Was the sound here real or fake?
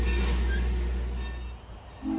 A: real